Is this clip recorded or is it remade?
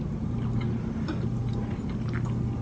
recorded